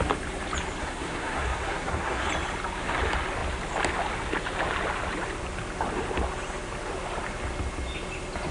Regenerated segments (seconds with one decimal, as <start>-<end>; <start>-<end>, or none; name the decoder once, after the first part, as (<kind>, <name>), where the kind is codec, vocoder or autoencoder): 0.8-2.3 (codec, SNAC)

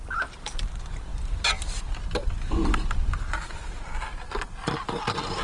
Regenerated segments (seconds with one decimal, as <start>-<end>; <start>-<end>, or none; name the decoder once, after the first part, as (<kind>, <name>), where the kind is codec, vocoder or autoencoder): none

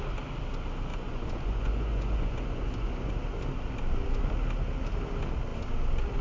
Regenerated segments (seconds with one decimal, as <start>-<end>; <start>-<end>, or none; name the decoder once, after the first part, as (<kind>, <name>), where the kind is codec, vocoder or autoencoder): 0.9-3.1 (vocoder, Vocos)

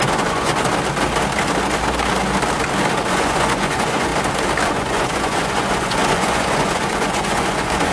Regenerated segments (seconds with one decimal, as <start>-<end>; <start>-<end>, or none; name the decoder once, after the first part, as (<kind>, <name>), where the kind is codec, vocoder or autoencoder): 0.0-0.5 (vocoder, Vocos); 3.1-4.1; 4.7-7.9

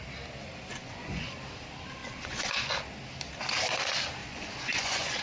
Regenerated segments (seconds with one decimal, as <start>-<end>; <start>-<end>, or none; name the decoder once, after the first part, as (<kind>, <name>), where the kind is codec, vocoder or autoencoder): 0.7-1.3 (vocoder, Vocos); 2.0-2.7; 4.2-5.2